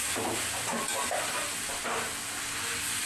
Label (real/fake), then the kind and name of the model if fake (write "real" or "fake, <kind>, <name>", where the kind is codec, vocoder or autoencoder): real